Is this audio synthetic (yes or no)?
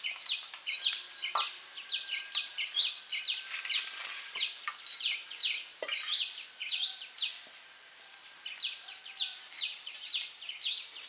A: no